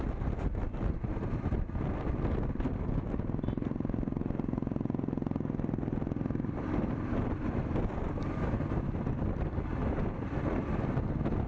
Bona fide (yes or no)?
yes